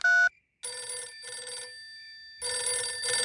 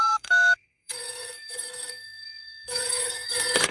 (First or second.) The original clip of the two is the first